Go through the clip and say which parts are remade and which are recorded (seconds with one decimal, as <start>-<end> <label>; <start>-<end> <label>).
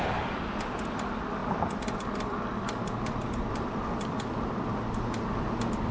0.0-5.9 remade